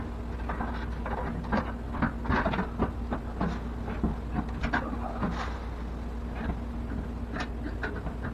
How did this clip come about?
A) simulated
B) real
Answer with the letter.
B